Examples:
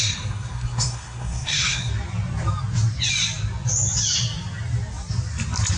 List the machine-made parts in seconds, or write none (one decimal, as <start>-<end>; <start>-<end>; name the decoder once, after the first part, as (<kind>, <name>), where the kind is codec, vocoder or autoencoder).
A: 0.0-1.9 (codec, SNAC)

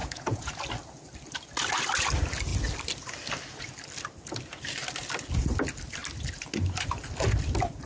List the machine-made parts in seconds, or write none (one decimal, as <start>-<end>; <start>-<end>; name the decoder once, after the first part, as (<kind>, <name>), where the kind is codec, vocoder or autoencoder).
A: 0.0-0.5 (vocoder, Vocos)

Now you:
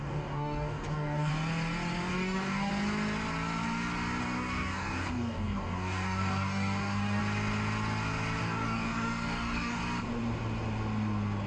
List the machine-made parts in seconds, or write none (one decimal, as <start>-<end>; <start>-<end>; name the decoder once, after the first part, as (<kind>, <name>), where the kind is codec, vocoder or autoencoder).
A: 0.0-1.3 (codec, DAC); 2.1-2.7; 4.2-7.2; 8.4-9.8

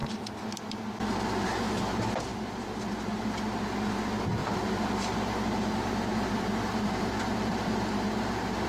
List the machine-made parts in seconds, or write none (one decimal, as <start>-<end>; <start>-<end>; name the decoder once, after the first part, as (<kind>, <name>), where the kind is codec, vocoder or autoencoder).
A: 0.0-0.6 (vocoder, BigVGAN v2); 2.3-2.8; 4.4-7.9

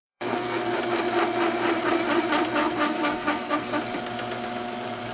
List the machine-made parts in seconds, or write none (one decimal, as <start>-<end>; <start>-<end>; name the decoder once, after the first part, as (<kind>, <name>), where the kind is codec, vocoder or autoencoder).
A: 0.0-0.8 (codec, SNAC); 2.6-3.7

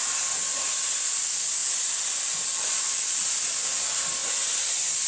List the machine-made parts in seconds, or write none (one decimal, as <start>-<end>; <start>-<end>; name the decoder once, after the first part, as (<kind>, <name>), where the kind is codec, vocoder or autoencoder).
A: none

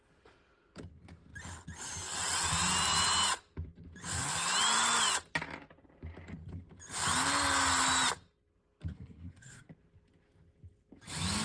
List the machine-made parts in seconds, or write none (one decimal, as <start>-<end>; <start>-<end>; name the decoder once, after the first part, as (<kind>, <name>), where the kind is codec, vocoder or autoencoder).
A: 8.9-9.7 (codec, SNAC)